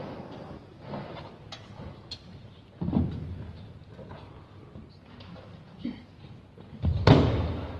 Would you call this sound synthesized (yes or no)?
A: no